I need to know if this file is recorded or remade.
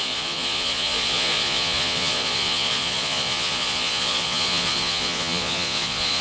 remade